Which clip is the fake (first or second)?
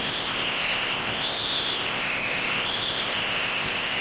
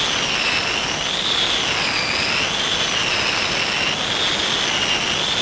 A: first